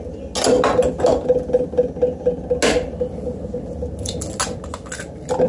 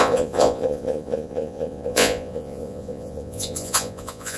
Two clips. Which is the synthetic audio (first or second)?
second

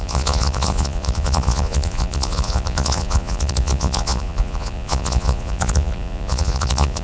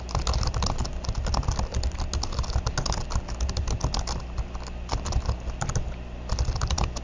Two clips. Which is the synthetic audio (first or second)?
first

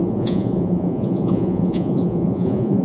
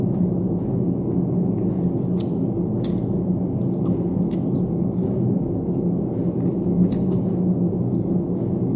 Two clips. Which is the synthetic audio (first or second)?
first